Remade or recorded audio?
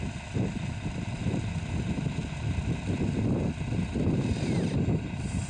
recorded